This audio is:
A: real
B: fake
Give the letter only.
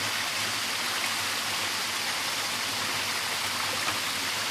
A